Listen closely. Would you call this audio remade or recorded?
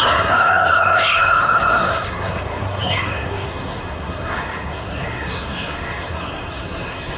remade